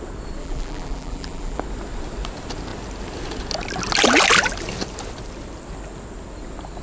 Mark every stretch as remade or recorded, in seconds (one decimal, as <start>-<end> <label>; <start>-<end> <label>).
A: 0.0-0.4 recorded; 0.4-1.6 remade; 1.6-6.8 recorded